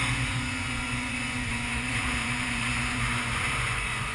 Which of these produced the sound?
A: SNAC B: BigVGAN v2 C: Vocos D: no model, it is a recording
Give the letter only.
C